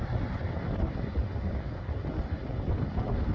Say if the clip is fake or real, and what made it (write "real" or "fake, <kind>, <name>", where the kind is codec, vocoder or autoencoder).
real